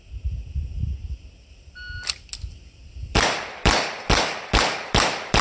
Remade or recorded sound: remade